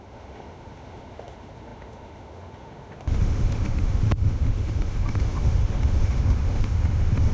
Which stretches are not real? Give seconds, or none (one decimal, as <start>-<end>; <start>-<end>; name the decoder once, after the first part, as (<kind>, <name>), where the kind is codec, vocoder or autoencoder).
0.0-7.3 (autoencoder, DAC-VAE)